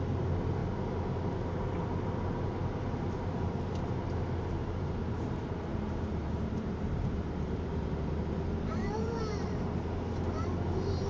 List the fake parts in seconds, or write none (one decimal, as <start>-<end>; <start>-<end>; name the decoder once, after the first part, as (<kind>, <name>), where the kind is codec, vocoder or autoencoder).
4.6-5.2 (vocoder, BigVGAN v2); 5.7-9.2